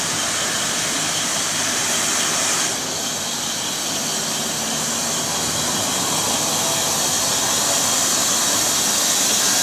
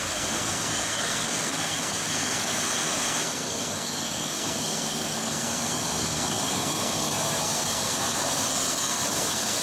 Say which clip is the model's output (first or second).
second